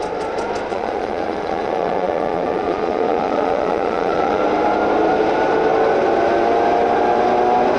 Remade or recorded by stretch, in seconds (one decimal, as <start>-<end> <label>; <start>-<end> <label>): 0.0-0.7 recorded; 0.7-4.4 remade; 4.4-7.8 recorded